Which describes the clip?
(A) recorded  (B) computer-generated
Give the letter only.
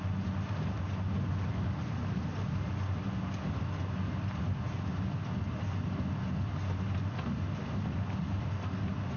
A